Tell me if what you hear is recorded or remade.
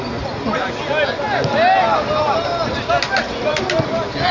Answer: recorded